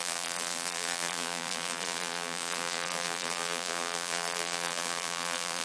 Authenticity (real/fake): fake